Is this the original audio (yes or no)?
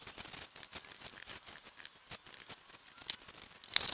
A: yes